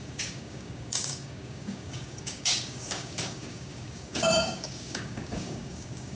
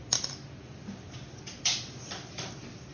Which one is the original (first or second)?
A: second